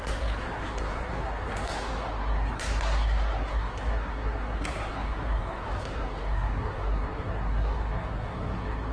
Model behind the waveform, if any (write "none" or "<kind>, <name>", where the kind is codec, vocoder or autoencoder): codec, SNAC